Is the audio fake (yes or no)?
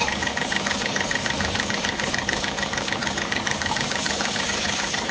yes